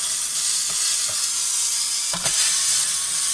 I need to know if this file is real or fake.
real